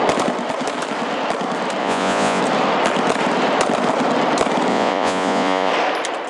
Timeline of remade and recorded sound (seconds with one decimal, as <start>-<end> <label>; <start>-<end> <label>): 0.0-1.8 recorded; 1.8-2.4 remade; 2.4-4.7 recorded; 4.7-5.7 remade; 5.7-6.3 recorded